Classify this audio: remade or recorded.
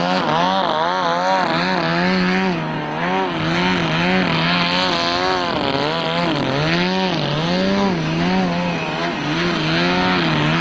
recorded